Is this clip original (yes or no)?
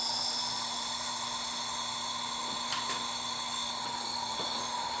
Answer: yes